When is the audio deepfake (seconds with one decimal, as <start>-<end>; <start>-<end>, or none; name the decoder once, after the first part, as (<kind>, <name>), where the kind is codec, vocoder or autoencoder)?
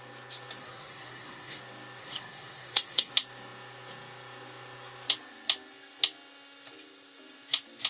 0.6-1.6 (codec, SNAC); 2.0-3.1